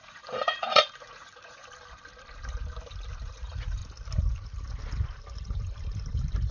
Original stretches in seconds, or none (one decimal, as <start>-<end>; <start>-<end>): 1.6-3.2; 3.8-6.5